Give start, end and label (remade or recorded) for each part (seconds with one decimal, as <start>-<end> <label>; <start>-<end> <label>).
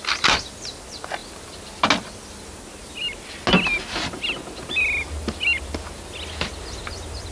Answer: 0.0-7.3 recorded